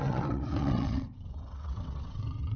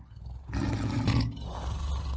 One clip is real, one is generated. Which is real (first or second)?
second